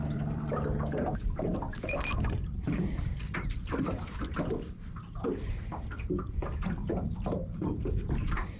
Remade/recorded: remade